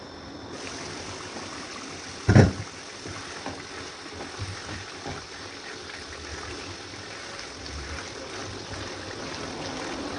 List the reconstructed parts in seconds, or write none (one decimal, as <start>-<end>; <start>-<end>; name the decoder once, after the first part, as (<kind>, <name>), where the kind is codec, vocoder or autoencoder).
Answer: none